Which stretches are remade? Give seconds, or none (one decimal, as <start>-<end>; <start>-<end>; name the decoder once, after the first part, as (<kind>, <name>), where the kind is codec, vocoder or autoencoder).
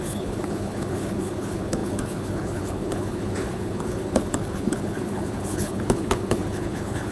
0.0-7.1 (codec, HILCodec)